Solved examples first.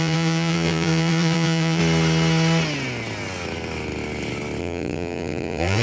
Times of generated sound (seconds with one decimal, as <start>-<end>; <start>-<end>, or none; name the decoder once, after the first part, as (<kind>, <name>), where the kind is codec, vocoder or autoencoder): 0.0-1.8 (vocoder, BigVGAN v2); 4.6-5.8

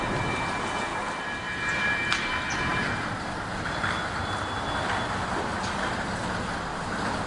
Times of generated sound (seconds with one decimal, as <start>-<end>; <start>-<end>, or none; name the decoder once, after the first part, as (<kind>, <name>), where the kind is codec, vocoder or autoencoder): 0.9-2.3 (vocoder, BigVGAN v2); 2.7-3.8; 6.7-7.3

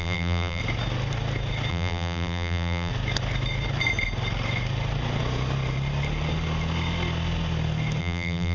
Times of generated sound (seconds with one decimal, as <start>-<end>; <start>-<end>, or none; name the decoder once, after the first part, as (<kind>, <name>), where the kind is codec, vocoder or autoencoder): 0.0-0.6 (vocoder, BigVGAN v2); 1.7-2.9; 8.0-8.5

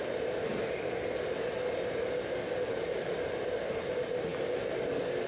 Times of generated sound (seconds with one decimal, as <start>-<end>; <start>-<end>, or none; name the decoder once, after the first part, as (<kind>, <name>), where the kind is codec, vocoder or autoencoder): none

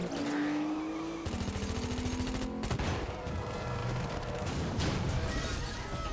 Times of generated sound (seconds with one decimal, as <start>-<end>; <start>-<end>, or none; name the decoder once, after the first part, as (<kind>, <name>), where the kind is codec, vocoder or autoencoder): 3.8-5.3 (vocoder, BigVGAN v2)